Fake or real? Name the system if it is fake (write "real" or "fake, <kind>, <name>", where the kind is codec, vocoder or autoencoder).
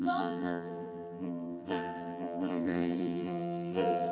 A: fake, vocoder, BigVGAN v2